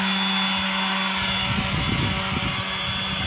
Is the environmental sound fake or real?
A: real